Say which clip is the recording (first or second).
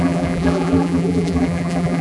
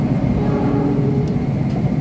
second